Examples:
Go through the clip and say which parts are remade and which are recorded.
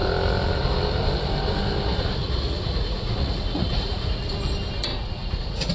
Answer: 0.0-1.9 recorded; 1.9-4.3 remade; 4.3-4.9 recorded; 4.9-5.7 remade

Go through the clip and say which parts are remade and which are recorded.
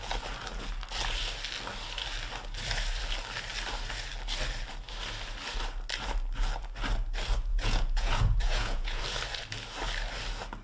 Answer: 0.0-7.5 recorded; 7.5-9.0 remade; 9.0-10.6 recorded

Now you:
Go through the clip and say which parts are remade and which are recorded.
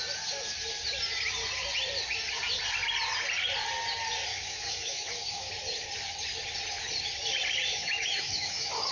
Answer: 0.0-4.3 recorded; 4.3-5.5 remade; 5.5-7.7 recorded; 7.7-8.9 remade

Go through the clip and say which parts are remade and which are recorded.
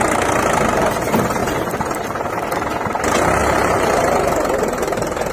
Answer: 0.0-1.4 recorded; 1.4-2.3 remade; 2.3-3.4 recorded; 3.4-5.3 remade